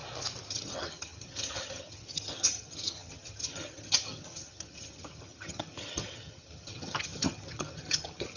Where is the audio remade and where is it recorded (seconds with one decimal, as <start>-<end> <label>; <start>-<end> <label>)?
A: 0.0-0.5 recorded; 0.5-8.4 remade

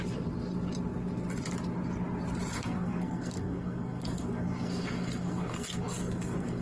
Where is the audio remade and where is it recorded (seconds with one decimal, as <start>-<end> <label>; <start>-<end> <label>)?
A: 0.0-2.5 recorded; 2.5-6.6 remade